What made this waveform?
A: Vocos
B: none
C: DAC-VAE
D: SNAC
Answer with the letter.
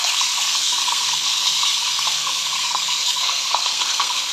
D